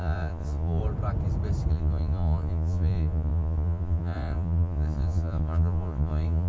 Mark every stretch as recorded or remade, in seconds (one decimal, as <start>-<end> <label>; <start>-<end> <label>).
0.0-0.8 remade; 0.8-1.7 recorded; 1.7-6.5 remade